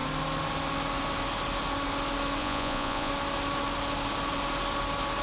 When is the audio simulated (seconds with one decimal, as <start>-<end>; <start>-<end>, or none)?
2.4-3.1